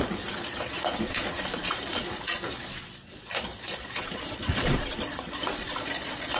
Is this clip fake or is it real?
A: fake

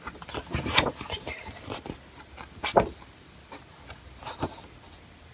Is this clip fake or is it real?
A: real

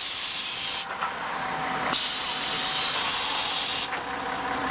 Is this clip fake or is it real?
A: real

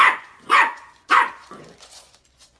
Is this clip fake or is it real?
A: fake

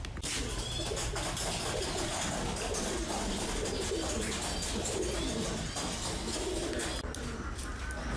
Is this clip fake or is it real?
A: real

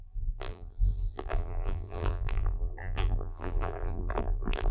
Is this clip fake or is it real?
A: fake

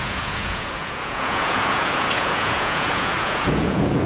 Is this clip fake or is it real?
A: fake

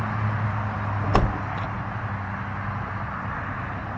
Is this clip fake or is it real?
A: real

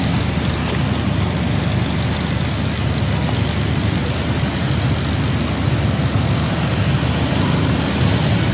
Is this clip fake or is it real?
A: real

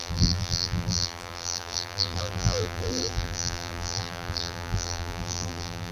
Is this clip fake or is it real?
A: fake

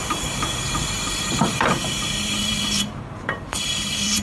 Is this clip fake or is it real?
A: fake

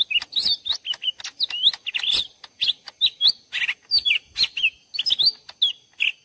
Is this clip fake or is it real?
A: real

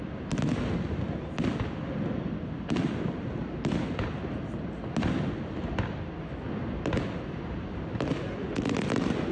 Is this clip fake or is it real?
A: real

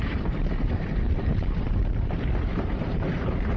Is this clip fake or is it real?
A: fake